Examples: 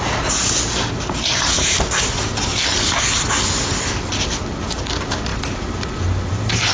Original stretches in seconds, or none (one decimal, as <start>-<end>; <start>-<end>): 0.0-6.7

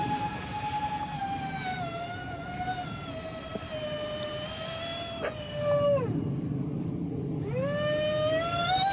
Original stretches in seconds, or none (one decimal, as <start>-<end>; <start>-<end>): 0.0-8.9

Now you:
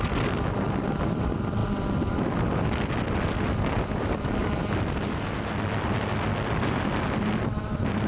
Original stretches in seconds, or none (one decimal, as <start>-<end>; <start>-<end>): 0.0-8.1